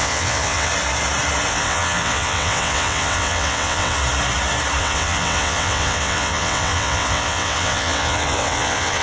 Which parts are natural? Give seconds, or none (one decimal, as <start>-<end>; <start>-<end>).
0.7-1.5; 4.0-4.8